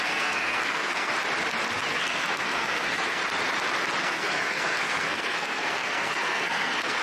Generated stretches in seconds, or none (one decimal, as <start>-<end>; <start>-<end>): 0.0-1.1; 1.9-3.2; 4.0-7.0